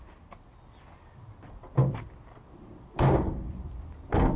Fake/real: real